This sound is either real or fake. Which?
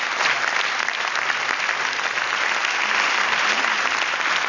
real